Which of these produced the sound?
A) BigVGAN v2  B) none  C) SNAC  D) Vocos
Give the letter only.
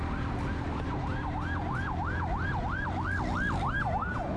B